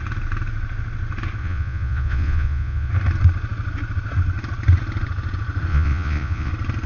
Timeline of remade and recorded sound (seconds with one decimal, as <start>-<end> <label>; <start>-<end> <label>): 0.0-1.4 recorded; 1.4-2.9 remade; 2.9-5.7 recorded; 5.7-6.5 remade; 6.5-6.9 recorded